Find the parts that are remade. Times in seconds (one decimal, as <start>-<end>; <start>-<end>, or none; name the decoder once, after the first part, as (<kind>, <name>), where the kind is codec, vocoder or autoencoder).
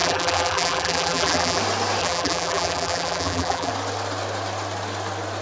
0.0-1.6 (vocoder, BigVGAN v2); 2.0-3.7